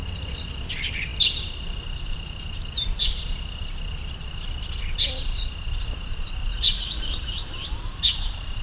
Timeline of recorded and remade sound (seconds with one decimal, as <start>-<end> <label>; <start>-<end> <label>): 0.0-6.5 recorded; 6.5-7.0 remade; 7.0-8.6 recorded

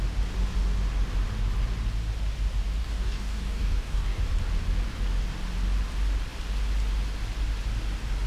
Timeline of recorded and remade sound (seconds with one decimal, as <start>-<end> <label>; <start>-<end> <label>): 0.0-2.8 recorded; 2.8-4.2 remade; 4.2-8.3 recorded